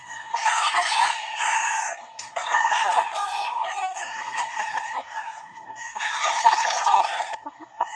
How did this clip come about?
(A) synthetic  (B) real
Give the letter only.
A